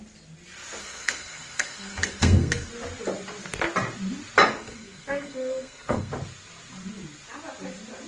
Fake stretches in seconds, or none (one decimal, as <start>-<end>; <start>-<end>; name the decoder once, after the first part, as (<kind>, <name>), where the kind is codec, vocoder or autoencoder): 0.8-2.7 (codec, SNAC); 4.5-6.1